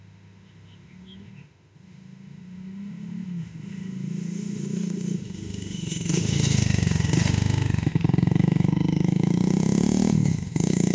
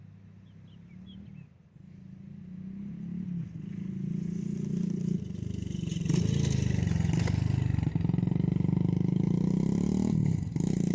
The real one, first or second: second